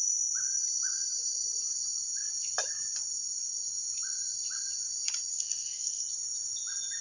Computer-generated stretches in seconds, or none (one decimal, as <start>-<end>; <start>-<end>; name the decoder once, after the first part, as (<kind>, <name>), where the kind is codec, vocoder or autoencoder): 5.3-6.0 (codec, SNAC)